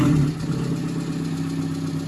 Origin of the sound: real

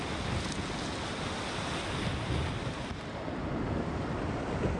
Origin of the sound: real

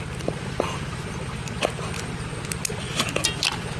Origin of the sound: real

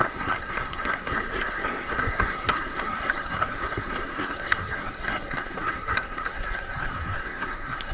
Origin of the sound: fake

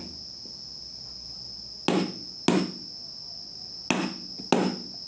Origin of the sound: real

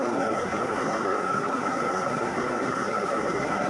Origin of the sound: fake